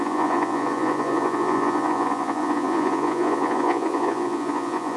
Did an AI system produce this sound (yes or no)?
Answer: yes